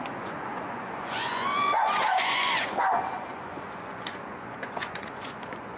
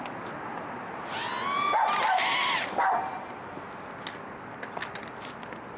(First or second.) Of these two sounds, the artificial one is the first